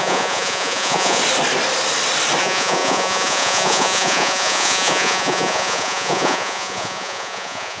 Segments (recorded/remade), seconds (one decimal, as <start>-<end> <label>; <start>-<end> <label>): 0.0-1.2 remade; 1.2-2.4 recorded; 2.4-7.8 remade